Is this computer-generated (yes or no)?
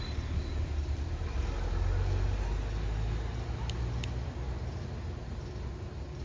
no